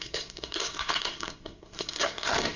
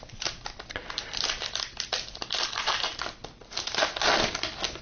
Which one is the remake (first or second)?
first